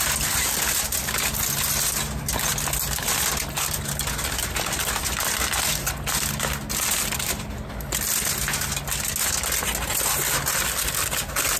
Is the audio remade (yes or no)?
no